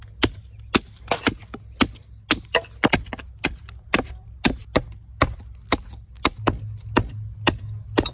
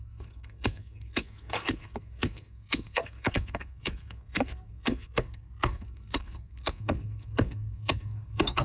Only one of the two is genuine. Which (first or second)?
first